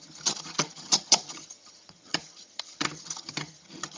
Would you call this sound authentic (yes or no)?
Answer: no